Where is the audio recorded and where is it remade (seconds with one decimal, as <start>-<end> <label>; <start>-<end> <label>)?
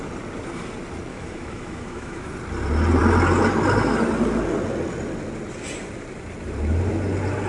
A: 0.0-1.1 recorded; 1.1-2.3 remade; 2.3-7.5 recorded